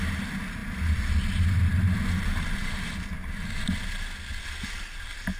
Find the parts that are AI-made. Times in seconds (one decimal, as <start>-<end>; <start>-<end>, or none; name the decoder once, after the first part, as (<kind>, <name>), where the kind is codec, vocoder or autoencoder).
0.6-3.6 (vocoder, BigVGAN v2)